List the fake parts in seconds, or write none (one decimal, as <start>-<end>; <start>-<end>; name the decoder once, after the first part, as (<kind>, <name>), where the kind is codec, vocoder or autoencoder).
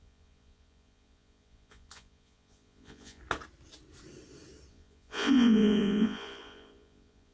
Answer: 0.0-3.2 (vocoder, Vocos); 4.7-7.3